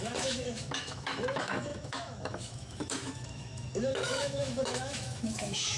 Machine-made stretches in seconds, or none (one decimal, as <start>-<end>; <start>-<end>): 0.0-5.8